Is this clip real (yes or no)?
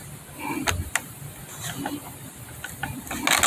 yes